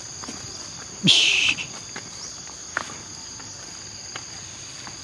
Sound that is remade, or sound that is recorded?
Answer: recorded